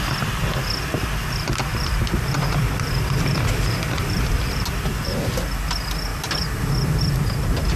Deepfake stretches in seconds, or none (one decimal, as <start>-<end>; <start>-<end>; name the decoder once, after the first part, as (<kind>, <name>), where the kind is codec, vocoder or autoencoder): 1.7-5.1 (vocoder, BigVGAN v2); 6.1-7.8

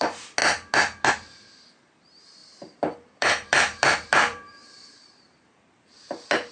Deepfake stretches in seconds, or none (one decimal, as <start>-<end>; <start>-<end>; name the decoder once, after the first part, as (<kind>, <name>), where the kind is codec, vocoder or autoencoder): 2.4-6.5 (vocoder, BigVGAN v2)

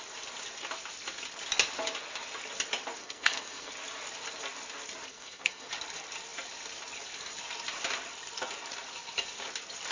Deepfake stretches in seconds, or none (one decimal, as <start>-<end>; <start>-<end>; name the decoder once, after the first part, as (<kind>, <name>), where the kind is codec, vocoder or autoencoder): 3.0-3.7 (codec, SNAC); 5.1-5.7

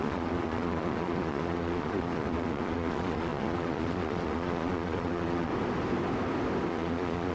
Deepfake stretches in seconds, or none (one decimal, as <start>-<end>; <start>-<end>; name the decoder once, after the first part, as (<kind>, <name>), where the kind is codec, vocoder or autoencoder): 0.0-5.5 (vocoder, Vocos); 6.7-7.3

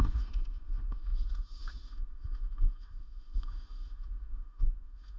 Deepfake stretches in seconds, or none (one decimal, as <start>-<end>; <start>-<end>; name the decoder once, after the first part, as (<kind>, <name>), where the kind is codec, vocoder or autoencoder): 0.0-5.2 (autoencoder, DAC-VAE)

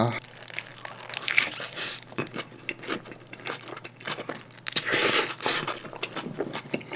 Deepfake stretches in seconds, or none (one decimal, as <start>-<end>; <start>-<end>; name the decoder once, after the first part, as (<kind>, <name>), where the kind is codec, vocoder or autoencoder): none